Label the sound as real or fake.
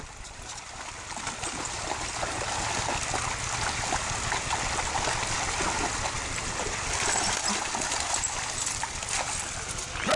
real